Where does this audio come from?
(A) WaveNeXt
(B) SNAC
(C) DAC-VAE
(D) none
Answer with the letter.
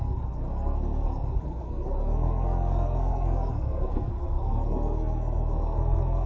B